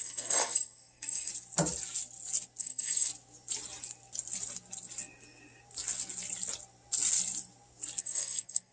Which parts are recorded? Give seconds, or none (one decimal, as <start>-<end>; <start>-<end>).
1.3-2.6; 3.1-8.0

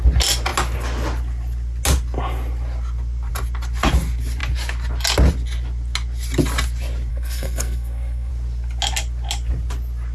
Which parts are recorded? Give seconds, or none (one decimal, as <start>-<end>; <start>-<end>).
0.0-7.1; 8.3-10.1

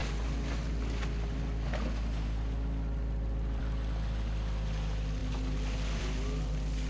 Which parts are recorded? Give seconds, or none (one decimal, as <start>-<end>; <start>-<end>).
0.0-6.9

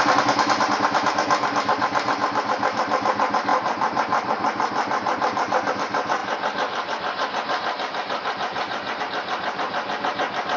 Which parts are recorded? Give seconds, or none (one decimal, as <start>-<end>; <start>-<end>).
0.0-10.6

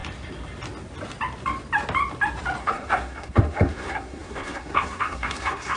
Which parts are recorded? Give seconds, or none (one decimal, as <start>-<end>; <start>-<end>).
0.0-2.6

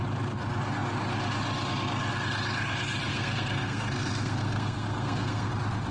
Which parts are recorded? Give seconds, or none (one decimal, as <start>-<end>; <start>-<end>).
0.0-3.1; 5.5-5.9

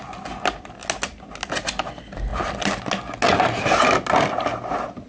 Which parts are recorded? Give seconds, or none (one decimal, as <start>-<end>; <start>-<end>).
0.0-5.1